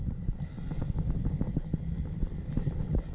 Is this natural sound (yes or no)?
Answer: yes